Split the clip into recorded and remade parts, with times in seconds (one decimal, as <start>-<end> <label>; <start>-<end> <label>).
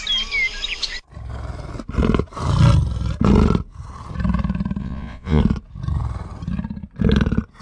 0.0-4.8 recorded; 4.8-5.4 remade; 5.4-7.6 recorded